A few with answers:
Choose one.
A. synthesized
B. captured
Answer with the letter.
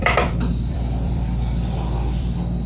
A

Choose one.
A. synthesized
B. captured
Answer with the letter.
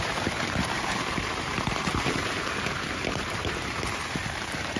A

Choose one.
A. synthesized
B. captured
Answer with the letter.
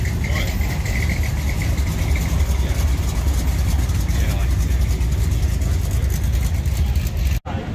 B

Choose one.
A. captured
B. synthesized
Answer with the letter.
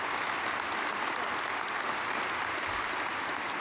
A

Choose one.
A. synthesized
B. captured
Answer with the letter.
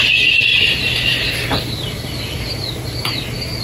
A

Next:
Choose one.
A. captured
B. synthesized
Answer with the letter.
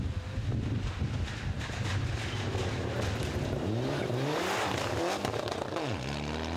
A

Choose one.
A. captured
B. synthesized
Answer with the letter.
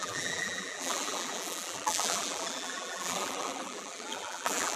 B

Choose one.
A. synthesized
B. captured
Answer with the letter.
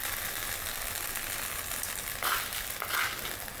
B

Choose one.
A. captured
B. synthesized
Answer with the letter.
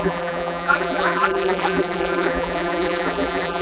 B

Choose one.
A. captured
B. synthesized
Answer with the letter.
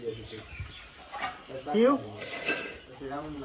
B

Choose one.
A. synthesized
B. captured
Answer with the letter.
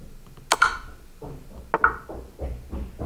B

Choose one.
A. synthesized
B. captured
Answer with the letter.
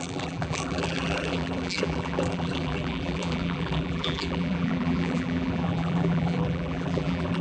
A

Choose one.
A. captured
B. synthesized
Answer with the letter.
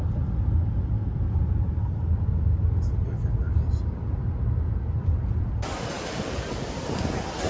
A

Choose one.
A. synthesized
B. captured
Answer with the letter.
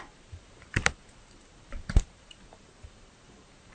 A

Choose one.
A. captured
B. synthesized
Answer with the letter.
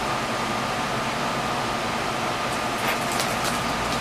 A